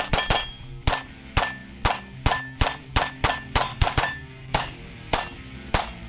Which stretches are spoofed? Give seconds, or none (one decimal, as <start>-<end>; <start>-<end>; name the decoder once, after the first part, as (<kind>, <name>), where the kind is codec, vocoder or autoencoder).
3.7-4.8 (codec, DAC)

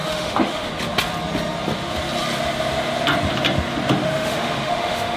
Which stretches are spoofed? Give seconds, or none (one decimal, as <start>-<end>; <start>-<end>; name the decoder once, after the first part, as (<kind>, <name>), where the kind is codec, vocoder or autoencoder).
0.0-0.7 (autoencoder, DAC-VAE); 4.0-5.2